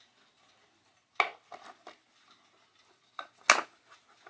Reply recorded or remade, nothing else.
recorded